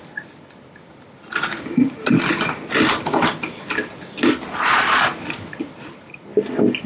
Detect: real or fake real